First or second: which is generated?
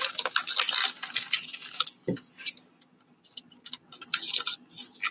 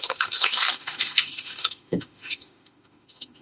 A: second